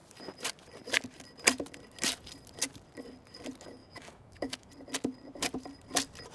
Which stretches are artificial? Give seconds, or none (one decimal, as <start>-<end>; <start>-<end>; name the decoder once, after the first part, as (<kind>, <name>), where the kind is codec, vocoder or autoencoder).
3.8-4.7 (autoencoder, DAC-VAE)